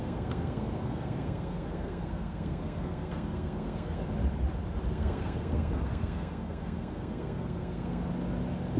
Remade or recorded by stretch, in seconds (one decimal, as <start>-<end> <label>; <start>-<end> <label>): 0.0-4.0 remade; 4.0-4.9 recorded; 4.9-8.1 remade; 8.1-8.8 recorded